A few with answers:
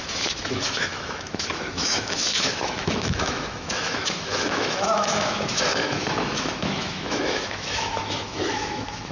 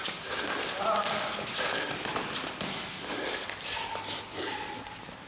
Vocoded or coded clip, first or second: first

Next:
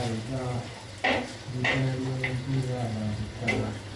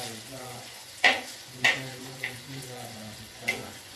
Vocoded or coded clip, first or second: second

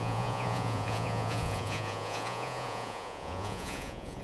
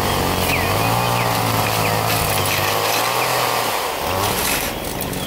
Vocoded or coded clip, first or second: first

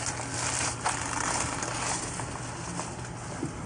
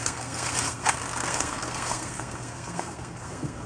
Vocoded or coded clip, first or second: second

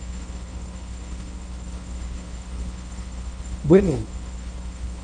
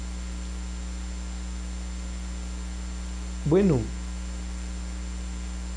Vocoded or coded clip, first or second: first